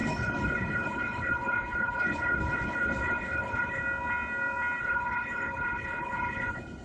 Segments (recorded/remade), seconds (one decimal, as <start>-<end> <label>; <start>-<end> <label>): 0.0-3.8 remade; 3.8-4.8 recorded; 4.8-6.8 remade